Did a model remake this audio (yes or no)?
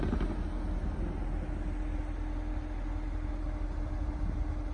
no